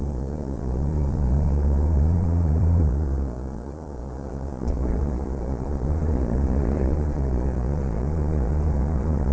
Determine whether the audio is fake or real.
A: fake